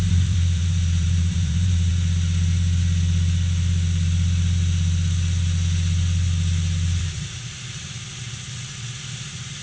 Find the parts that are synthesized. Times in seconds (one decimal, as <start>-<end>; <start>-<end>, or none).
0.0-1.9; 7.0-9.6